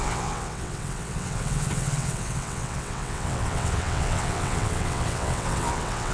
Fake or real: fake